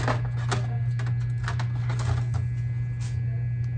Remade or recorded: recorded